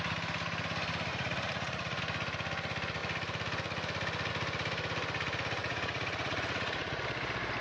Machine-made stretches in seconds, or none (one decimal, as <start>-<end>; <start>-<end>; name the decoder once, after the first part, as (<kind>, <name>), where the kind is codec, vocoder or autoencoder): 1.1-2.0 (vocoder, Vocos); 5.6-7.0